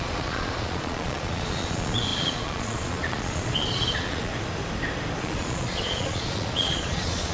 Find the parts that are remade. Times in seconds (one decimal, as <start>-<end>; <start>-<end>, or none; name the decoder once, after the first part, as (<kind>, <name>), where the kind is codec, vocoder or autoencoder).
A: 0.0-4.3 (vocoder, Vocos); 5.2-7.3